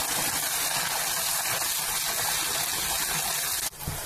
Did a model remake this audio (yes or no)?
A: no